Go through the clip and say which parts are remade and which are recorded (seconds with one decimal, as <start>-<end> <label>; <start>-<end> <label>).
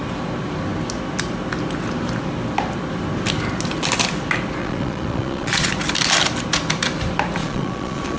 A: 0.0-4.6 recorded; 4.6-5.7 remade; 5.7-7.4 recorded; 7.4-8.2 remade